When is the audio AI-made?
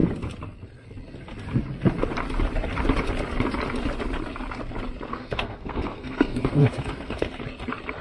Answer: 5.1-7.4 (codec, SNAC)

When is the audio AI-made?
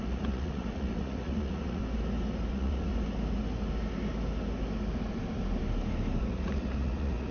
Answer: 0.0-1.8 (vocoder, Vocos); 2.5-2.9; 6.2-7.3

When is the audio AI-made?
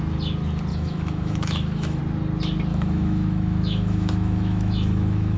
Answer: 0.7-2.0 (autoencoder, DAC-VAE); 2.7-5.4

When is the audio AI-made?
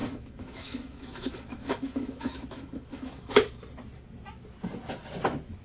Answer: 0.0-3.3 (autoencoder, DAC-VAE)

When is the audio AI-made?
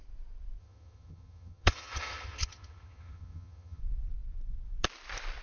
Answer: 0.6-3.8 (vocoder, HiFi-GAN)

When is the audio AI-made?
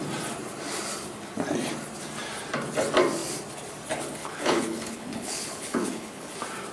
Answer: 4.2-6.3 (codec, HILCodec)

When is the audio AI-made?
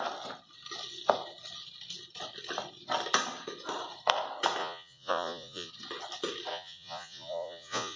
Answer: 4.6-5.7 (vocoder, Vocos); 6.5-8.0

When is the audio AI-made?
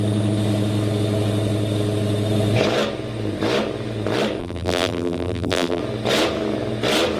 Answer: 4.4-5.8 (vocoder, BigVGAN v2)